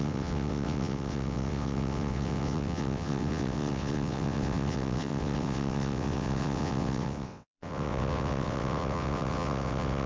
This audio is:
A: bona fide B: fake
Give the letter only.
B